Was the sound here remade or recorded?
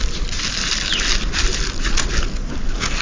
remade